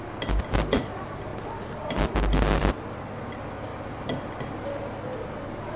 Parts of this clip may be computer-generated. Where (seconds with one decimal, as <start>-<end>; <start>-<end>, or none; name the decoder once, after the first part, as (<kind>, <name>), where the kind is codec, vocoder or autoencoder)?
none